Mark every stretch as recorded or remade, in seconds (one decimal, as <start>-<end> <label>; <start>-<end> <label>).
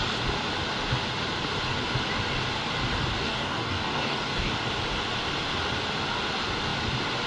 0.0-3.2 recorded; 3.2-4.5 remade; 4.5-7.3 recorded